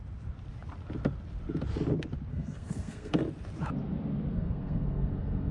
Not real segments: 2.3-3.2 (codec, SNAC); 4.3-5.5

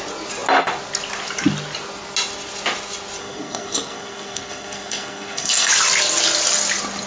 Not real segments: 3.2-5.7 (codec, SNAC)

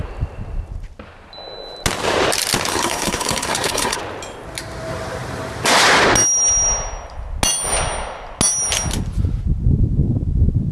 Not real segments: 2.7-4.0 (codec, SNAC)

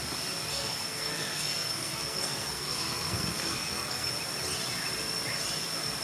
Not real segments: 0.5-4.1 (codec, SNAC)

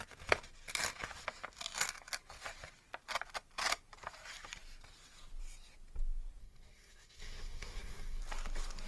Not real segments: 6.4-8.2 (codec, SNAC)

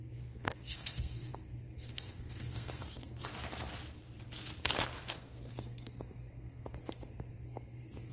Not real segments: 0.0-3.3 (codec, SNAC); 5.0-8.1